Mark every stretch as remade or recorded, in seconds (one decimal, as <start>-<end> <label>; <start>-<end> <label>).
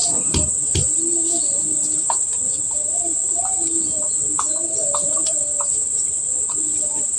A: 0.0-0.5 remade; 0.5-7.2 recorded